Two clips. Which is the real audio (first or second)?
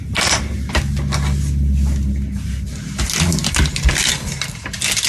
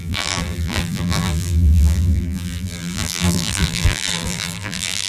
first